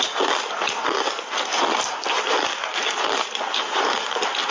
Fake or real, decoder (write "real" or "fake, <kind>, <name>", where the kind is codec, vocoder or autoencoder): real